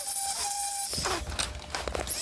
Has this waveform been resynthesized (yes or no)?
no